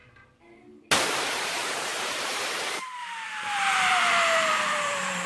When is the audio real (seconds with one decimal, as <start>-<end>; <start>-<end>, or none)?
0.0-1.0